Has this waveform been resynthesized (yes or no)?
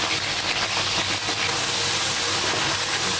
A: no